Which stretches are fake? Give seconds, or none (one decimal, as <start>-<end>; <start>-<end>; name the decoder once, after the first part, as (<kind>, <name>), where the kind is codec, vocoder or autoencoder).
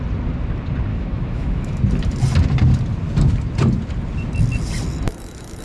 0.9-1.8 (autoencoder, DAC-VAE)